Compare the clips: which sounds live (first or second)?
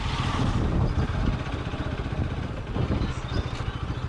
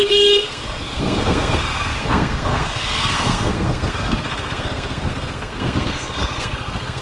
first